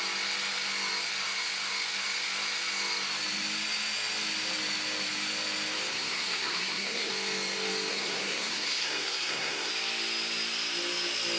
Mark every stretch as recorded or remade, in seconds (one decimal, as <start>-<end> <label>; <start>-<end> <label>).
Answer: 0.0-5.9 recorded; 5.9-7.1 remade; 7.1-7.9 recorded; 7.9-9.7 remade; 9.7-11.4 recorded